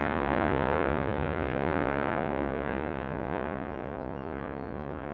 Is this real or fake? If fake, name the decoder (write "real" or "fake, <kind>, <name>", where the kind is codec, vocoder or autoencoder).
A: fake, vocoder, Vocos